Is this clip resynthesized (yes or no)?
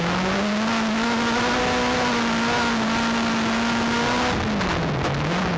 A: no